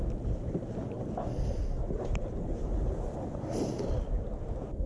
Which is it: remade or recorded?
recorded